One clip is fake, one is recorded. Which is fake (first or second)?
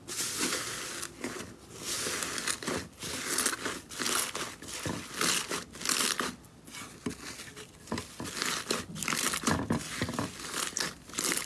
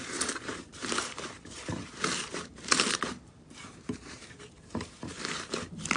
second